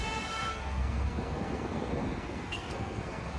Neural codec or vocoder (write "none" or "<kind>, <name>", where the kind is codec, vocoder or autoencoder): codec, SNAC